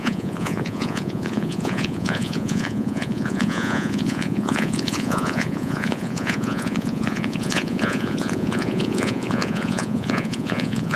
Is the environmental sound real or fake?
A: fake